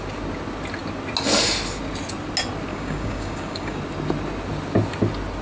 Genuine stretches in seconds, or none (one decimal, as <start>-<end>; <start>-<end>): 0.0-2.7; 3.8-5.4